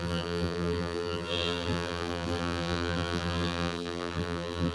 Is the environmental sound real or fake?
fake